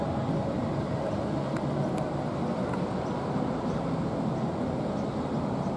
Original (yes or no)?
yes